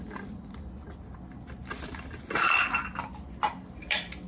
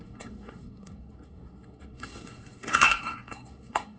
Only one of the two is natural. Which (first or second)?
first